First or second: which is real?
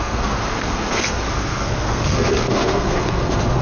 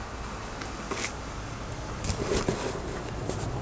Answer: second